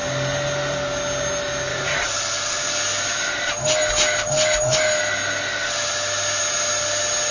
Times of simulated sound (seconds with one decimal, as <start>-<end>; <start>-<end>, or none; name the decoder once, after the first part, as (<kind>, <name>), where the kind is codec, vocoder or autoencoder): 1.7-2.2 (vocoder, BigVGAN v2)